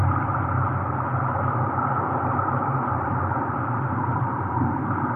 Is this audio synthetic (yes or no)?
yes